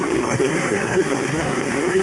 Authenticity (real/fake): fake